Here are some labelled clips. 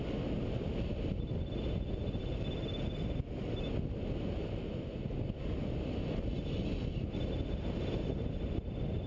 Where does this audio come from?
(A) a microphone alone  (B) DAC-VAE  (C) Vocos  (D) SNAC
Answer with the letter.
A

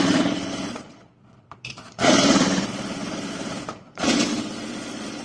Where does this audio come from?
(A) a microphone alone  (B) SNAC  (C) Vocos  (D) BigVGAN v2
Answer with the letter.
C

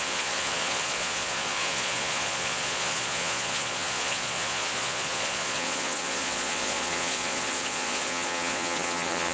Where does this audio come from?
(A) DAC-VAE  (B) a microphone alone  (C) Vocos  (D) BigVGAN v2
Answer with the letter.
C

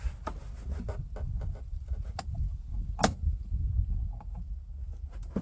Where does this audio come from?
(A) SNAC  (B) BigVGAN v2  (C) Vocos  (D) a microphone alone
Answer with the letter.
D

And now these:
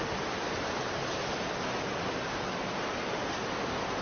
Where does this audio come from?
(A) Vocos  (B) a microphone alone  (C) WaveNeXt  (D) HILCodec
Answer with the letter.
B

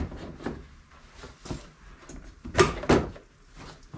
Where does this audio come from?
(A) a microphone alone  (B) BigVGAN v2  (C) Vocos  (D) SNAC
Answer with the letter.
A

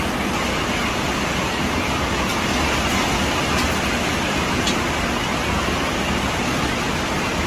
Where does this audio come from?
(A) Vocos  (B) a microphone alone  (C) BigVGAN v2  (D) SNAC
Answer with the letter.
B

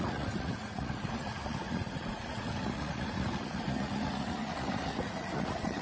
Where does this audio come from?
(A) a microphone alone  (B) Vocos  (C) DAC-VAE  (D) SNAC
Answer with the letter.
B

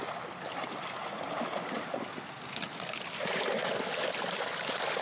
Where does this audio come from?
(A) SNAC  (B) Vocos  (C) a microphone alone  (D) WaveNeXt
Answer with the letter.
C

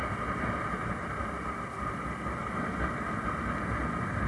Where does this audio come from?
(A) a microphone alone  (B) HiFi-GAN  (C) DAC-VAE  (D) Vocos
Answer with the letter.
A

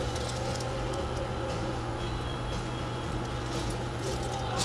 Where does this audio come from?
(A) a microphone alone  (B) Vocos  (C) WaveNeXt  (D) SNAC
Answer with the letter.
B